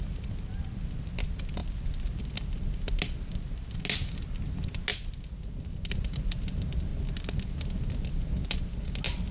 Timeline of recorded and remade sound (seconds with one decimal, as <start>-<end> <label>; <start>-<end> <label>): 0.0-9.3 recorded